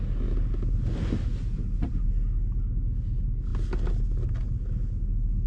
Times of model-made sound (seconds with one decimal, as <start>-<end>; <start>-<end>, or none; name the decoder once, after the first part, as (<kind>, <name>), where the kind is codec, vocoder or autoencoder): none